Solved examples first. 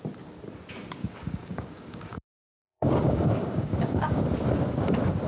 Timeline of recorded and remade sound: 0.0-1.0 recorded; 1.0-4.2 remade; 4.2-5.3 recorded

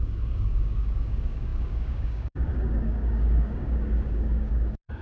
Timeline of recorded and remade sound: 0.0-5.0 remade